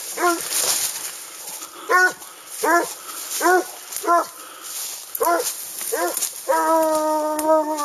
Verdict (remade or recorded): recorded